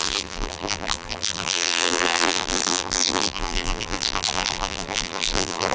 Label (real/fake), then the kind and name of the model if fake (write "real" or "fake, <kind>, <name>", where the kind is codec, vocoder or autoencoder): fake, vocoder, BigVGAN v2